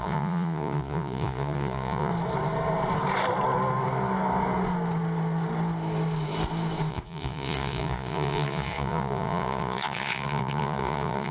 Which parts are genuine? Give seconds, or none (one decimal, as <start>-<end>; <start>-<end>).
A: 2.1-6.9